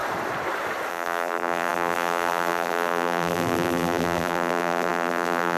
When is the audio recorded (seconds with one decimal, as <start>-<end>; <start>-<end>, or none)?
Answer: 0.0-0.9